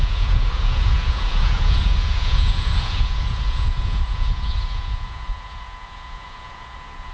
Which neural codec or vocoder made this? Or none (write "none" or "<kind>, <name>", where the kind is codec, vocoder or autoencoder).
vocoder, Vocos